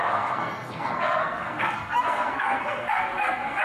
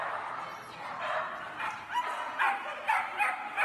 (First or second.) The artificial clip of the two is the first